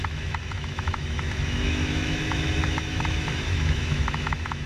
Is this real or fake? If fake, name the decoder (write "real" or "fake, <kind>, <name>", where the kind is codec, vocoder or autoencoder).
fake, autoencoder, DAC-VAE